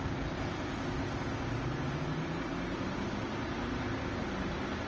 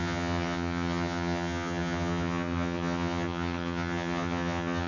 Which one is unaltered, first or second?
first